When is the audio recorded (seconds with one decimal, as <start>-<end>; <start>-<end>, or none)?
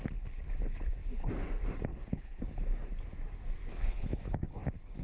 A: 0.0-1.9; 2.4-3.6; 4.3-5.0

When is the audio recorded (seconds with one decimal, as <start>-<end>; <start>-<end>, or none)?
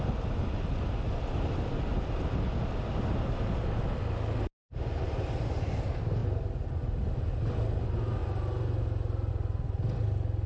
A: 0.0-10.5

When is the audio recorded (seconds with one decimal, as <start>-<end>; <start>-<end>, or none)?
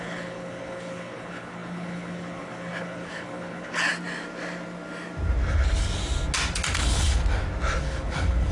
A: 3.9-6.8; 7.2-7.8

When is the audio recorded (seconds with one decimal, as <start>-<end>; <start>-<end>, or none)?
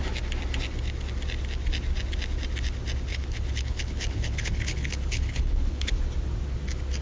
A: 0.0-3.1; 5.9-7.0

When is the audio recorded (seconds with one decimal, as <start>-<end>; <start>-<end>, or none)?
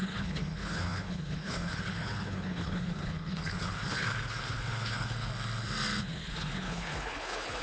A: 5.3-6.0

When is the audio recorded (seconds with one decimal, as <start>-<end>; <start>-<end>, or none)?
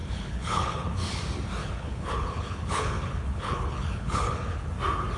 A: 1.2-1.6; 4.7-5.2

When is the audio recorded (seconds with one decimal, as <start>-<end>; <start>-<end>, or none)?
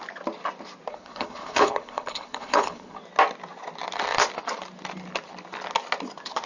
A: 0.0-0.9; 3.0-6.5